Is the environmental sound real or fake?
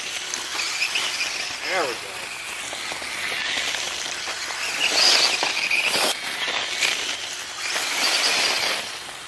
real